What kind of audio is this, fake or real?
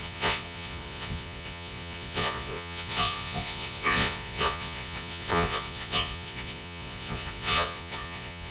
fake